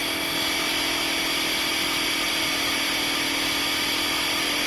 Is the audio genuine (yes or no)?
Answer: yes